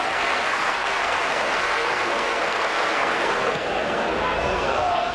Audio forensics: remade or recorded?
remade